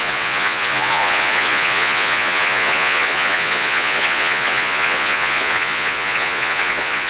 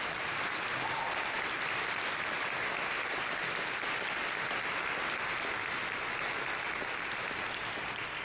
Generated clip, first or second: first